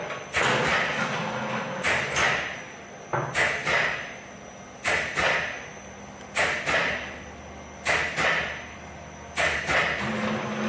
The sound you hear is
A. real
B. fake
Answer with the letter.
A